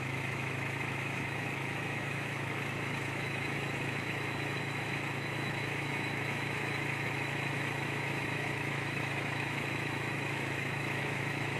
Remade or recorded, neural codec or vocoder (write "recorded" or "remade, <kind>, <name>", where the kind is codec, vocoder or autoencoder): remade, autoencoder, DAC-VAE